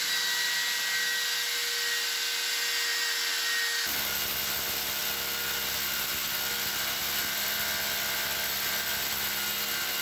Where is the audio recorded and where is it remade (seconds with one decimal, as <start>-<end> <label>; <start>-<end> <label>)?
0.0-10.0 recorded

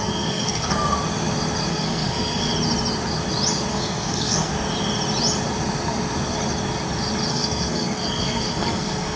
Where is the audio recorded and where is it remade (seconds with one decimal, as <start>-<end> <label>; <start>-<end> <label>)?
0.0-0.9 remade; 0.9-1.7 recorded; 1.7-2.5 remade; 2.5-3.7 recorded; 3.7-4.5 remade; 4.5-7.3 recorded; 7.3-9.2 remade

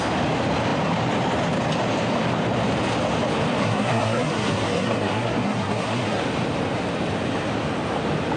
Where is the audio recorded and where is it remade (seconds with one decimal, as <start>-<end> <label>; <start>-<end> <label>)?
0.0-3.6 recorded; 3.6-6.2 remade; 6.2-8.4 recorded

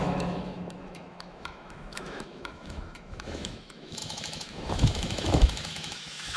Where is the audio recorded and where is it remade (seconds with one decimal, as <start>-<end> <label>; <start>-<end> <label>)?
0.0-6.4 remade